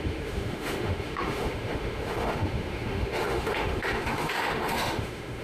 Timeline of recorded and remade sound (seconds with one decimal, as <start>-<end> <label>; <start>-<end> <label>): 0.0-5.4 remade